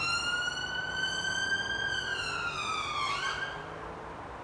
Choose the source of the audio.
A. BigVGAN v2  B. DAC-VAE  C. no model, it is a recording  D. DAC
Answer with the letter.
C